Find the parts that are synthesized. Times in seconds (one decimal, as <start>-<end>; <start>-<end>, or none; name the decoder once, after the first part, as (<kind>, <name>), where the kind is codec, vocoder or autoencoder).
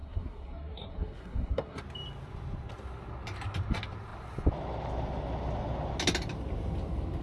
0.0-1.8 (codec, SNAC)